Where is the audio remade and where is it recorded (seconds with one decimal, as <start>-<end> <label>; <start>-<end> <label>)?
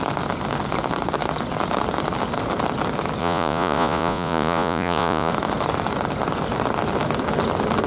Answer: 0.0-3.2 recorded; 3.2-5.3 remade; 5.3-7.9 recorded